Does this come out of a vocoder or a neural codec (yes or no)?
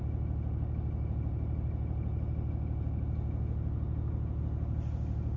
no